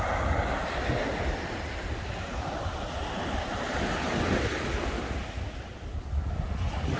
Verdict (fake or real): real